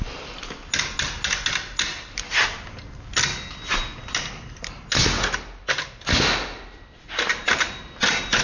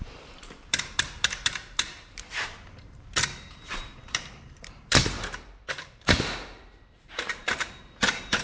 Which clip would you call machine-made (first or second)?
second